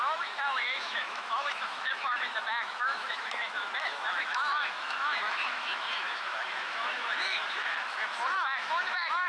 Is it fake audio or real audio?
fake